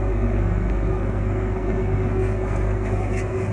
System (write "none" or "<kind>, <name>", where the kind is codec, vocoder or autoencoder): codec, SNAC